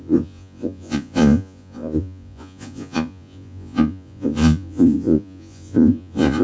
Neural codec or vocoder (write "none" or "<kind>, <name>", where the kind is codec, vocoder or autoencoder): vocoder, Vocos